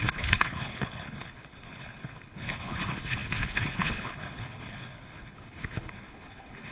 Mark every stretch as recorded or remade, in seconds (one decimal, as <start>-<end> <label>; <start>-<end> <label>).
0.0-6.7 remade